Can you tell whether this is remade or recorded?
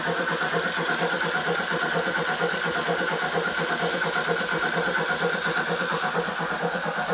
recorded